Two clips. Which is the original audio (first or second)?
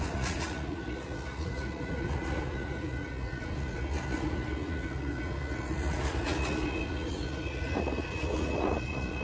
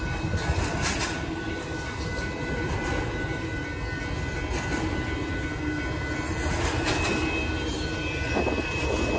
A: second